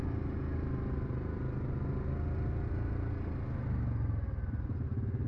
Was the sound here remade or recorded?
recorded